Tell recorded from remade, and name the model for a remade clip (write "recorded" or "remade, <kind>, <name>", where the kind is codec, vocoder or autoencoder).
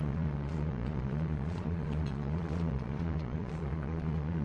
remade, vocoder, Vocos